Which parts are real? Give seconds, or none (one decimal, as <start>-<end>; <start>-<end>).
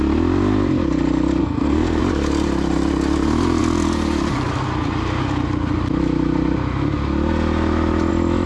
0.0-1.4; 2.0-8.5